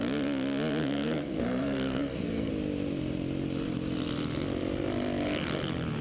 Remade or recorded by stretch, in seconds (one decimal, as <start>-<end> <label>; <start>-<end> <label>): 0.0-0.8 recorded; 0.8-2.5 remade; 2.5-6.0 recorded